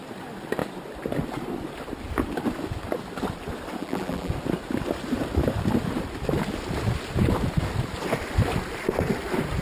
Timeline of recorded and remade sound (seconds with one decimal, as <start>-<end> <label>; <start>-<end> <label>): 0.0-3.8 recorded; 3.8-4.3 remade; 4.3-9.6 recorded